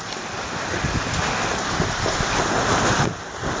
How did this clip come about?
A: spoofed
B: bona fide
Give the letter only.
B